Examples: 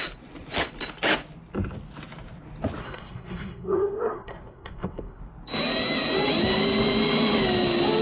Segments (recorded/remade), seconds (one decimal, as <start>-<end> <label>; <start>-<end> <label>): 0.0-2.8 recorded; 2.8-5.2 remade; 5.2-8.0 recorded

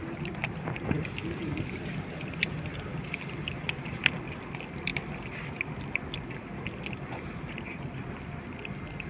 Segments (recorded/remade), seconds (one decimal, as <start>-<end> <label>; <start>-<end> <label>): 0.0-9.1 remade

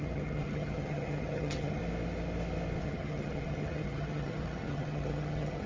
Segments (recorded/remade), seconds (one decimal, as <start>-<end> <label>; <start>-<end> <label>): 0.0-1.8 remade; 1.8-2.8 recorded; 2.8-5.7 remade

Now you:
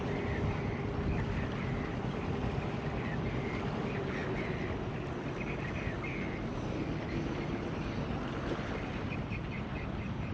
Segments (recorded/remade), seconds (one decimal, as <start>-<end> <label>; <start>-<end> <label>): 0.0-10.3 recorded

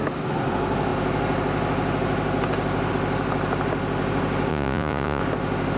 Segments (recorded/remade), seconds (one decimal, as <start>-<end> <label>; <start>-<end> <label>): 0.0-4.5 recorded; 4.5-5.2 remade; 5.2-5.8 recorded

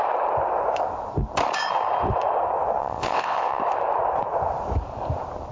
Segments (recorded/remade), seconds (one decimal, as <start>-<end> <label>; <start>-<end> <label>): 0.0-2.8 recorded; 2.8-3.6 remade; 3.6-5.5 recorded

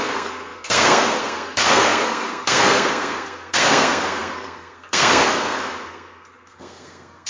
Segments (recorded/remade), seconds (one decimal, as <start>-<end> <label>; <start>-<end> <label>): 0.0-7.3 remade